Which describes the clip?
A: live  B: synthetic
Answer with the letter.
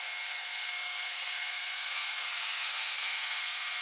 B